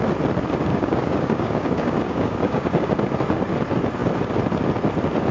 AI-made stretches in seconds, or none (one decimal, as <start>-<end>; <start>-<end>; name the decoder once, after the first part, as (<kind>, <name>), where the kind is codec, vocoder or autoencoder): 0.7-2.9 (codec, DAC)